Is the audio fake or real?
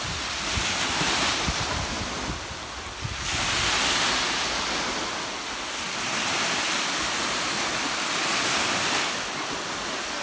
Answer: real